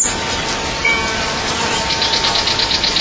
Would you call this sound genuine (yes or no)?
yes